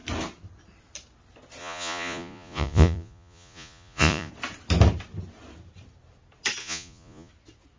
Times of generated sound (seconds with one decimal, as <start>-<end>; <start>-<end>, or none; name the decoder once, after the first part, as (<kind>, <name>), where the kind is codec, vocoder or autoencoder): 1.6-4.3 (vocoder, Vocos); 6.6-7.3